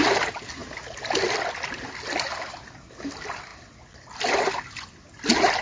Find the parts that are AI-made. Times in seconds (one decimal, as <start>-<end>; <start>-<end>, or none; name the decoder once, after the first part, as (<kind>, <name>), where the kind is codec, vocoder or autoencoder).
none